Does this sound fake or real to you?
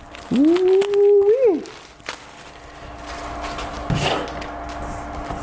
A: real